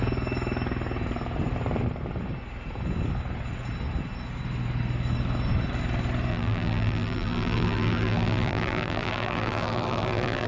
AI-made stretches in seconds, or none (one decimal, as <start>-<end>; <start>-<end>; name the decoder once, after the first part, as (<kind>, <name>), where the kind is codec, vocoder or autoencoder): 6.3-10.5 (vocoder, BigVGAN v2)